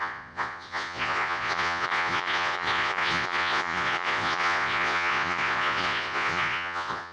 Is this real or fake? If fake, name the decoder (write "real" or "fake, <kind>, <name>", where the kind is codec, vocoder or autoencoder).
fake, vocoder, Vocos